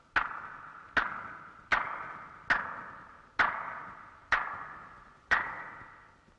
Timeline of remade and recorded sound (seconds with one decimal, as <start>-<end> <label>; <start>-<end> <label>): 0.0-4.2 recorded; 4.2-5.6 remade; 5.6-6.4 recorded